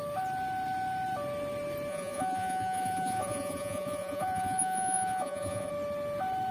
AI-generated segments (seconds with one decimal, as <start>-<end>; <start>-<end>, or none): 1.9-5.7